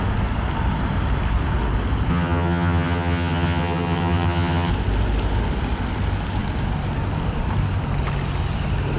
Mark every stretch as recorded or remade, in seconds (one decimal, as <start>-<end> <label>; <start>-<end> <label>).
0.0-2.1 recorded; 2.1-4.7 remade; 4.7-9.0 recorded